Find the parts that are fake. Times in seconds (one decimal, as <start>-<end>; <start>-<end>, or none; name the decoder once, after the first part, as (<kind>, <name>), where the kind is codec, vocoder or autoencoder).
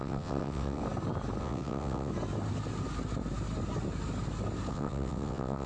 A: 0.0-0.8 (vocoder, WaveNeXt); 1.4-2.1; 4.7-5.7